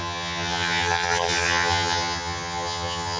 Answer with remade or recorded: remade